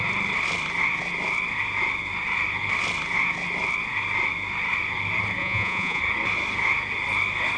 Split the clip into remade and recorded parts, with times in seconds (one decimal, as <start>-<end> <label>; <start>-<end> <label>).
0.0-5.4 recorded; 5.4-6.0 remade; 6.0-7.6 recorded

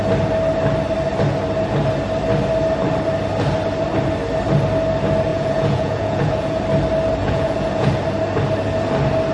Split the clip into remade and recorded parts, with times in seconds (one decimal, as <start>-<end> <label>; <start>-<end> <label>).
0.0-5.3 recorded; 5.3-6.6 remade; 6.6-7.2 recorded; 7.2-7.9 remade; 7.9-9.3 recorded

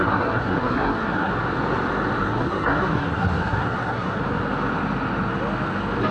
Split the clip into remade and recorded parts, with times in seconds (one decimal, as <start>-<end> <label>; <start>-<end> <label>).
0.0-1.3 remade; 1.3-2.2 recorded; 2.2-4.2 remade; 4.2-6.1 recorded